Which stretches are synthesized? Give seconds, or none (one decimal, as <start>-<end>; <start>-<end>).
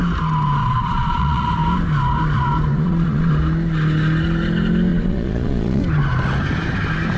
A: 0.6-1.5; 2.7-3.3; 4.9-5.8